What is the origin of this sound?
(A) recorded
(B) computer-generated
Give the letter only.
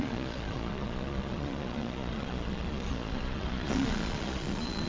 B